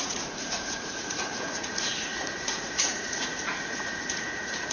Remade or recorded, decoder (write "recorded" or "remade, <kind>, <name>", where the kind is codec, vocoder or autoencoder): remade, vocoder, Vocos